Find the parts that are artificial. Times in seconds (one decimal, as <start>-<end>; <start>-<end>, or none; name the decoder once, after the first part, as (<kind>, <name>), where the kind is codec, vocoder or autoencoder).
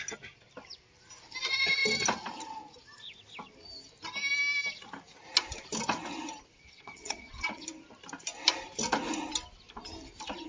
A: 6.5-7.6 (vocoder, WaveNeXt)